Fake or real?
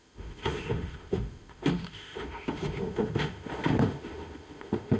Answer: fake